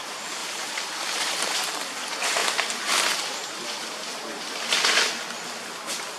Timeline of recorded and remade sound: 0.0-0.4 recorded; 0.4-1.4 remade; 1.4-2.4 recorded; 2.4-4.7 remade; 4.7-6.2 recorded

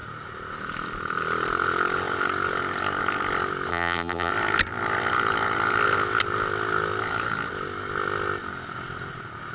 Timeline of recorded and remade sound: 0.0-3.7 recorded; 3.7-4.3 remade; 4.3-9.5 recorded

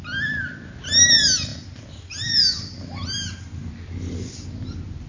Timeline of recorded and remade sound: 0.0-5.1 recorded

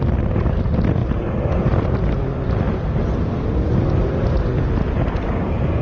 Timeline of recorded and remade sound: 0.0-1.0 recorded; 1.0-4.2 remade; 4.2-5.8 recorded

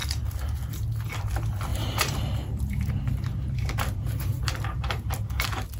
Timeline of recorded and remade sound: 0.0-1.7 recorded; 1.7-5.1 remade; 5.1-5.8 recorded